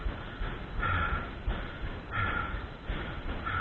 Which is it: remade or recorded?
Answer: recorded